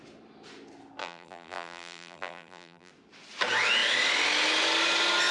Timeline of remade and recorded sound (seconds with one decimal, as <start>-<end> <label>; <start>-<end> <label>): 0.0-1.0 recorded; 1.0-2.9 remade; 2.9-5.3 recorded